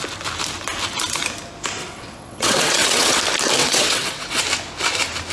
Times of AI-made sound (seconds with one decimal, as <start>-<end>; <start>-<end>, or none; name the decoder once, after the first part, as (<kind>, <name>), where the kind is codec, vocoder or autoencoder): 1.8-3.2 (vocoder, WaveNeXt); 3.6-4.4